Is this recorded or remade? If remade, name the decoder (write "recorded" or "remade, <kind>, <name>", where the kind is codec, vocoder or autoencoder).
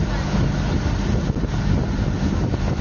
recorded